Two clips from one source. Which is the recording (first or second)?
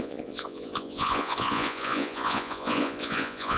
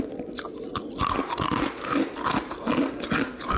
second